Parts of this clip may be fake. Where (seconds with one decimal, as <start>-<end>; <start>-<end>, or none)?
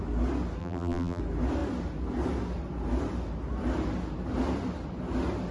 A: 0.6-1.2